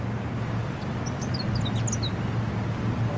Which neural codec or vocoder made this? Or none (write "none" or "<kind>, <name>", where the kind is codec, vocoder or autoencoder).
none